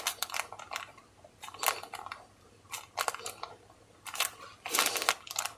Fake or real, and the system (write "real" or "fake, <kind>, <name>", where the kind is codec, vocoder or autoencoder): real